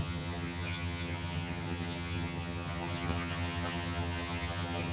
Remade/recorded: remade